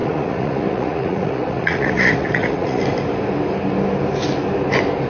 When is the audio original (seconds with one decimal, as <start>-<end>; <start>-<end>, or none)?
2.8-5.1